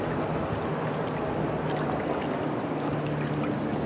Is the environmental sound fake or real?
real